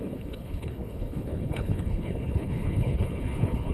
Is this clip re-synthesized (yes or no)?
yes